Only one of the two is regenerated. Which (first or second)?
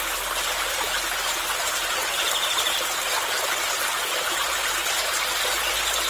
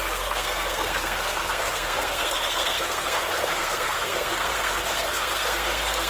second